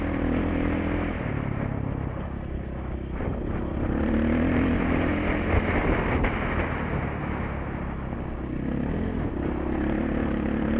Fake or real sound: real